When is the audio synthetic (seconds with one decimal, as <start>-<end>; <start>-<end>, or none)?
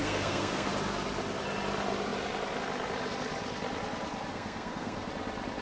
0.0-0.7; 4.3-5.1